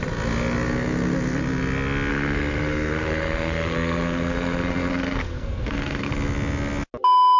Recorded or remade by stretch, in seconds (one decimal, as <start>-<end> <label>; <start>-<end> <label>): 0.0-2.1 recorded; 2.1-6.1 remade; 6.1-7.4 recorded